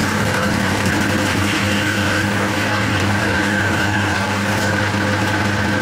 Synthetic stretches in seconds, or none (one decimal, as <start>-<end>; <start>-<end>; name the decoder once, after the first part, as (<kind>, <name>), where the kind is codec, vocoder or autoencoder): 0.0-0.9 (codec, DAC); 1.3-4.8